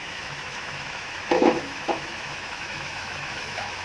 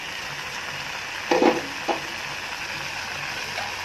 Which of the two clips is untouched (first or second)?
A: second